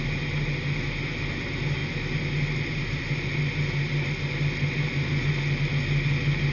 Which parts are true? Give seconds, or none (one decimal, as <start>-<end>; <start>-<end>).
0.0-6.5